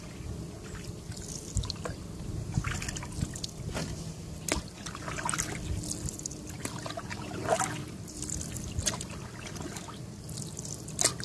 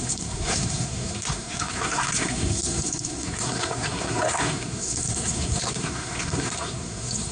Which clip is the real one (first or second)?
first